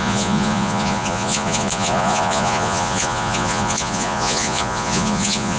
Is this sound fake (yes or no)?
yes